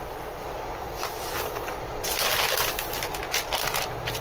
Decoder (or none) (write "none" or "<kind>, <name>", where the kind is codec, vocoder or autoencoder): none